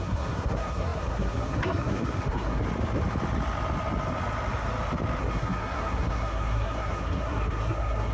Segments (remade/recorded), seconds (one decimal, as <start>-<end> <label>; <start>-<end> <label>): 0.0-2.6 remade; 2.6-5.2 recorded; 5.2-8.1 remade